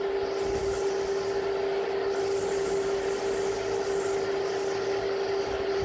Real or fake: real